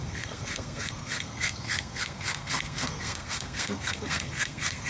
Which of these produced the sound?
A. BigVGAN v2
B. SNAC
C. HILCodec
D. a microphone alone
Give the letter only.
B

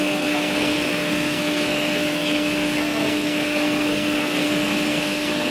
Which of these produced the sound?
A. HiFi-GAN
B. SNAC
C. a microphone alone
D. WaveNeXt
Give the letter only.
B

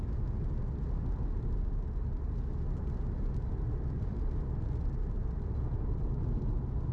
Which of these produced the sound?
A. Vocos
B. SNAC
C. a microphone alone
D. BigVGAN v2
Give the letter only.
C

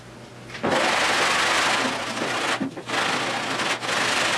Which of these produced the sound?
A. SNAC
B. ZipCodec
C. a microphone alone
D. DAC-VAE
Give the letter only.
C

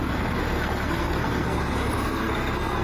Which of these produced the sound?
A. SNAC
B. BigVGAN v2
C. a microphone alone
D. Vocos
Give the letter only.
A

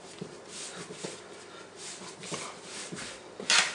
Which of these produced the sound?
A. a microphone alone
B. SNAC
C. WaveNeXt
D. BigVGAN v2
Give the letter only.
A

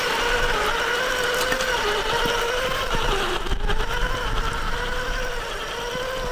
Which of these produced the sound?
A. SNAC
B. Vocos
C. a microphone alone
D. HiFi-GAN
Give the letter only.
C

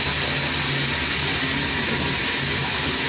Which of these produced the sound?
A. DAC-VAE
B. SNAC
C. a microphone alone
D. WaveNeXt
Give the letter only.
C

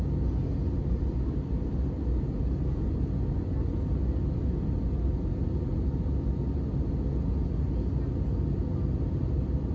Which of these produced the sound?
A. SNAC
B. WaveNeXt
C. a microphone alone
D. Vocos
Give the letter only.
C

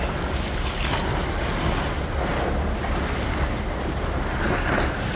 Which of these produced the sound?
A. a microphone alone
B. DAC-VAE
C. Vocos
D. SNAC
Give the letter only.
A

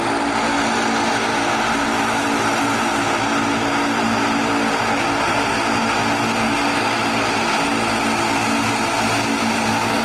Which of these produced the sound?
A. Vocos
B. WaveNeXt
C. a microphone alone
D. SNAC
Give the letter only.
C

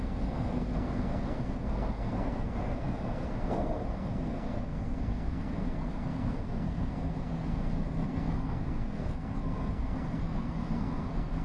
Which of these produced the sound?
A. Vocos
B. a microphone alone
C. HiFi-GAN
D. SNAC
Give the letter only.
D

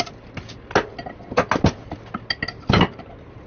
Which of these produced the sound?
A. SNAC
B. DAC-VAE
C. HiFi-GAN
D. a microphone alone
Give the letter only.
D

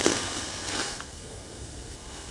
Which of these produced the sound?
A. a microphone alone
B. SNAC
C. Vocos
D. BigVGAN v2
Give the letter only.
B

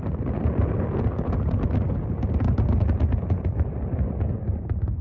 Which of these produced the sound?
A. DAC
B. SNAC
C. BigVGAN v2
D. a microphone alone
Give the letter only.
D